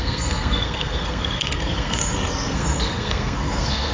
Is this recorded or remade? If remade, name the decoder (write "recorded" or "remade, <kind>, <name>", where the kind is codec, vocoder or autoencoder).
remade, codec, SNAC